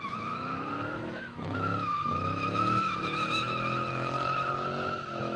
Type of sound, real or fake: fake